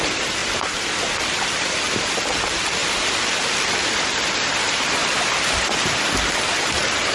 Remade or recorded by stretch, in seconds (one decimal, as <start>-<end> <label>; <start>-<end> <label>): 0.0-2.8 remade; 2.8-3.7 recorded; 3.7-5.0 remade; 5.0-6.6 recorded; 6.6-7.1 remade